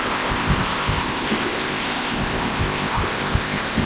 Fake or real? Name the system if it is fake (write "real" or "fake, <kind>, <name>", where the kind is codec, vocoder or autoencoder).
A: fake, codec, ZipCodec